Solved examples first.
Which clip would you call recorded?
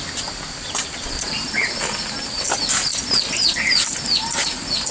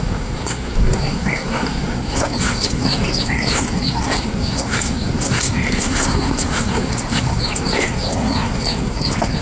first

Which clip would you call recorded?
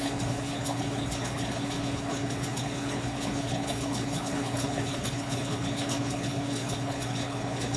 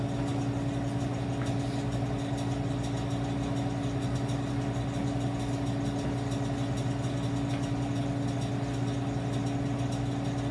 second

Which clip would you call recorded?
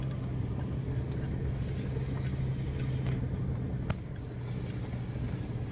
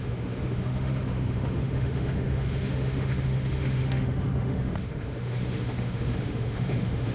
first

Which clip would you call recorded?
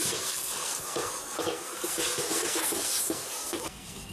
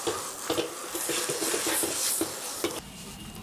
second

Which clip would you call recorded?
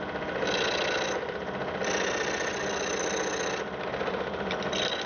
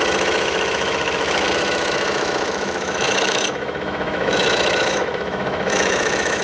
first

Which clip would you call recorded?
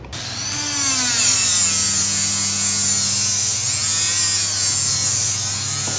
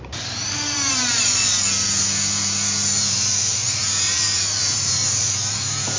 first